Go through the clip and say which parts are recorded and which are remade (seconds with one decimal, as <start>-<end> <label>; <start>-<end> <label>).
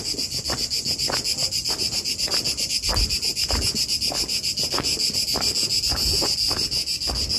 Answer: 0.0-7.4 recorded